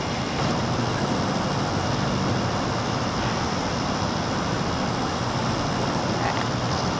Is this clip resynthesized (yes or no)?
yes